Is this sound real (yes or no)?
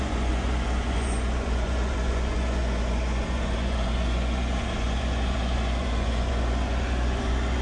no